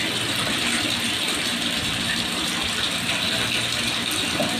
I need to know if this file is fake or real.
fake